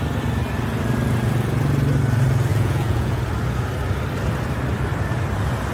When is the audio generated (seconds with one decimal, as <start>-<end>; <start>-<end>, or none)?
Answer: 2.5-3.2